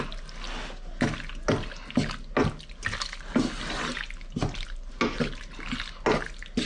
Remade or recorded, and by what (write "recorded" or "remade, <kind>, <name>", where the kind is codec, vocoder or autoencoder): recorded